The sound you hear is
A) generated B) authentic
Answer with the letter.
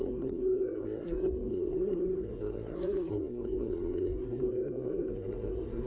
A